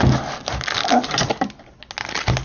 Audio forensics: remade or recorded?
recorded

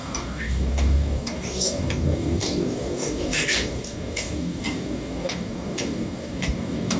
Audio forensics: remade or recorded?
remade